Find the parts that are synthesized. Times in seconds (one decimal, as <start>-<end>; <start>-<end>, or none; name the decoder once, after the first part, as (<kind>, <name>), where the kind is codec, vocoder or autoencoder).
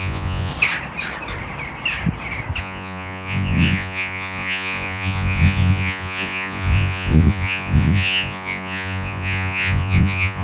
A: 0.0-0.5 (vocoder, Vocos); 2.6-10.4